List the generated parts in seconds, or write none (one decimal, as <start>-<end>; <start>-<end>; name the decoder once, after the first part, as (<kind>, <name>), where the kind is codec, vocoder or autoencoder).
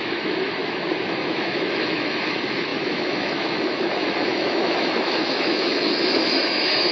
0.0-6.9 (autoencoder, DAC-VAE)